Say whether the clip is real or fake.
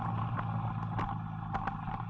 real